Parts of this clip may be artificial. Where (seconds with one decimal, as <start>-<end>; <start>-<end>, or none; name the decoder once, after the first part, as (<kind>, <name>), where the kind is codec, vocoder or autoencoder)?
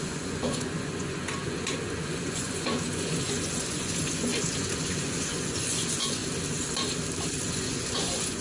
0.0-6.2 (vocoder, Vocos); 7.5-8.4